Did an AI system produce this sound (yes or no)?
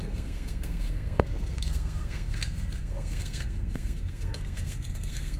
yes